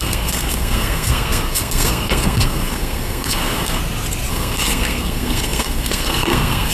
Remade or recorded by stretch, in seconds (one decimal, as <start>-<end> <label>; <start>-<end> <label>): 0.0-3.8 remade; 3.8-4.3 recorded; 4.3-6.7 remade